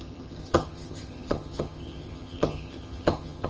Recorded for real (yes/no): no